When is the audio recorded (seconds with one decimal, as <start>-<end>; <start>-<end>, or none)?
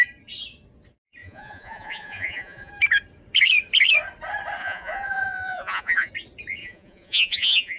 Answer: 0.0-1.2; 2.7-4.6; 6.1-6.6